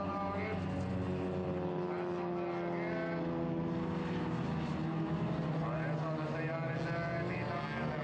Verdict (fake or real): real